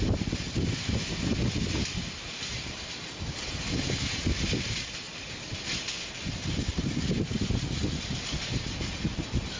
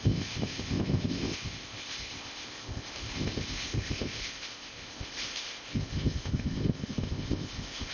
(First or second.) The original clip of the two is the first